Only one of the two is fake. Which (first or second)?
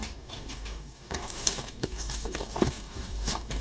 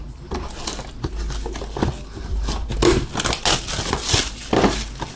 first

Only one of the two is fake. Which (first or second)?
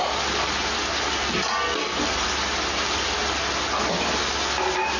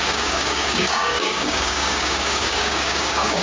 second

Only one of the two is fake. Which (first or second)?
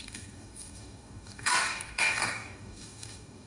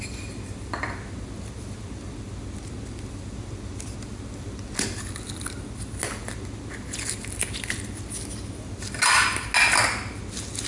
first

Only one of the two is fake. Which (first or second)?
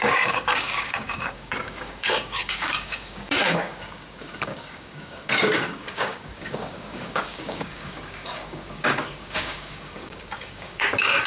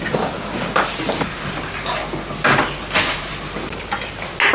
first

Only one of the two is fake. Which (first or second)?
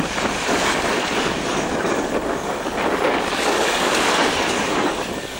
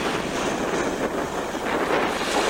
first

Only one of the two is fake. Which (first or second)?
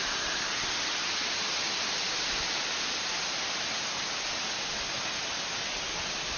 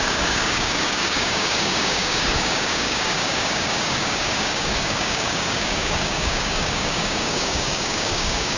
second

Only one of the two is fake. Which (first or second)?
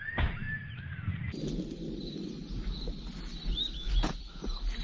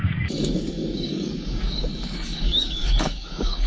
second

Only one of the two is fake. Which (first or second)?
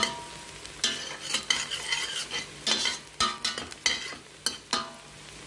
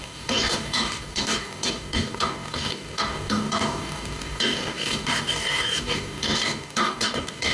second